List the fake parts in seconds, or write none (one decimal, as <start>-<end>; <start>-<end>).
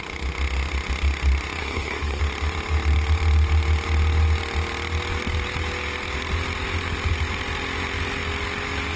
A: 1.6-2.2